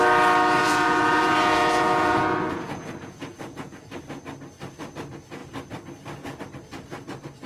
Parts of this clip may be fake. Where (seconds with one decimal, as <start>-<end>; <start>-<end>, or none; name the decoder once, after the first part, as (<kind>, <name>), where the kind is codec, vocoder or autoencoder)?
0.6-4.0 (vocoder, Vocos)